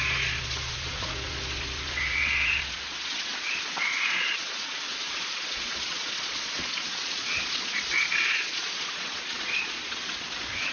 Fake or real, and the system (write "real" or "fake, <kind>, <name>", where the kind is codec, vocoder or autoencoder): fake, vocoder, Vocos